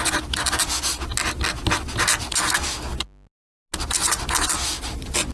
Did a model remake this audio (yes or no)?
no